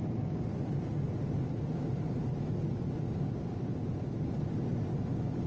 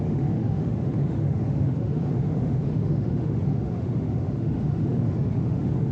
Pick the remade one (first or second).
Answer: second